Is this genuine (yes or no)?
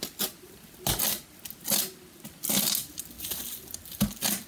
yes